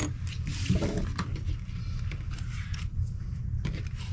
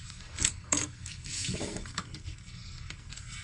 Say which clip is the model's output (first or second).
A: second